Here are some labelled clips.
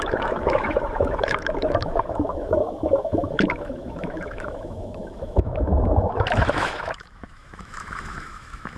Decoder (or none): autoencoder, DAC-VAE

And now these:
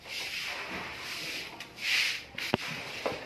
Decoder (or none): none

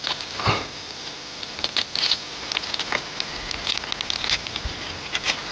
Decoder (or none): none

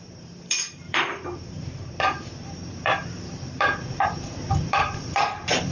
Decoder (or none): vocoder, BigVGAN v2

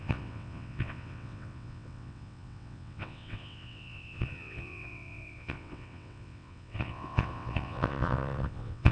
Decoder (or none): vocoder, WaveNeXt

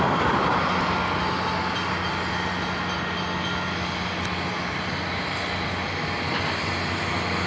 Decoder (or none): none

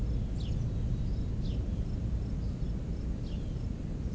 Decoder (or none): none